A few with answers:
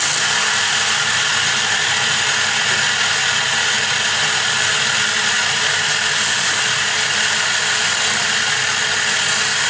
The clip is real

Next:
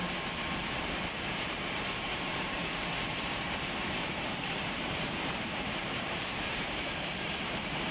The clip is fake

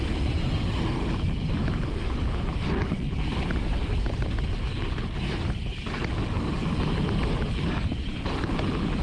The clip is real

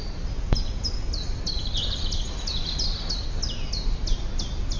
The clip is real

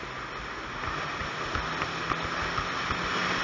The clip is real